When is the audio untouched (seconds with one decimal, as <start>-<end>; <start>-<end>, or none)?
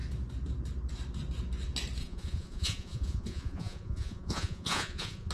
0.0-2.0